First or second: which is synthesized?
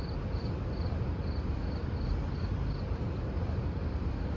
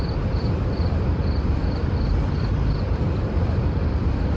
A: second